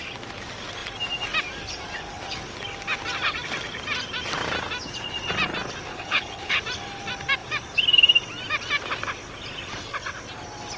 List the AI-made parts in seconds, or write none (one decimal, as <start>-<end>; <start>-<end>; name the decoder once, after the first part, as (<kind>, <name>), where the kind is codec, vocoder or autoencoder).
5.9-6.6 (codec, HILCodec)